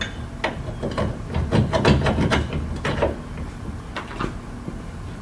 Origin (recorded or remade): recorded